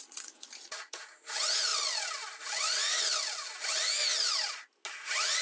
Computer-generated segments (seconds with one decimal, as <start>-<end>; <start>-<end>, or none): 0.0-1.7; 4.9-5.4